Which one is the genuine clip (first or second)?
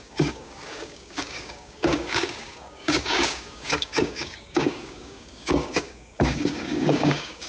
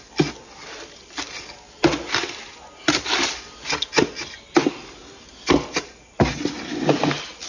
second